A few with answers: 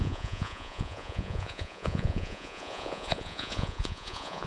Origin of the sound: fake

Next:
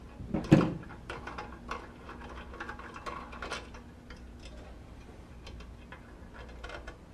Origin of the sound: real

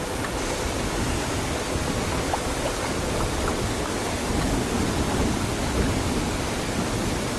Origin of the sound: real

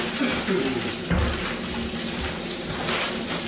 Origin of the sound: real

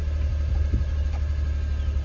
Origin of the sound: real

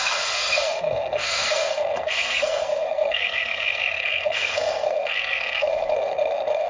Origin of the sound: fake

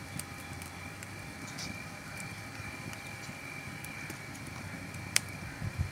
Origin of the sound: fake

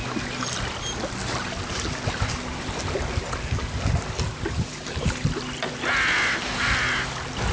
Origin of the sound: real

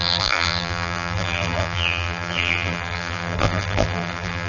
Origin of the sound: fake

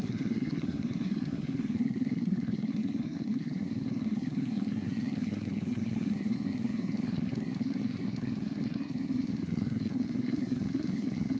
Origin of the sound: fake